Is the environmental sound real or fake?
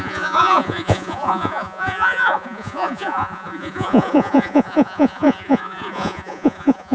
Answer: fake